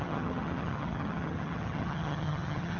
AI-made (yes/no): yes